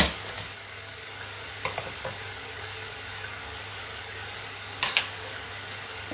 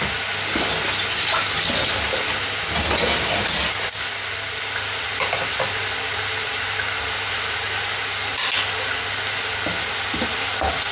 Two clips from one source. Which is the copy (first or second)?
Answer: first